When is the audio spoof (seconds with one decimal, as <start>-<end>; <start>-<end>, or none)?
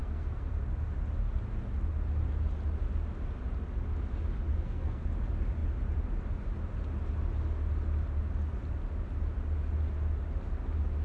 0.0-0.5; 4.5-5.1